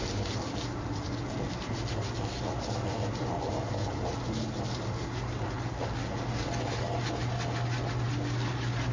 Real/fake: real